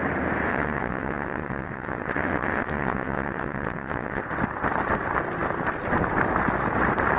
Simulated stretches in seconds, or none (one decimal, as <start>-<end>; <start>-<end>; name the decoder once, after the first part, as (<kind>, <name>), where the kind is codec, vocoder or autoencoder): 0.5-4.2 (vocoder, WaveNeXt)